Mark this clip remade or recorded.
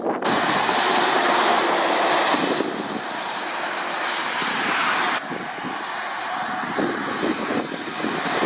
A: recorded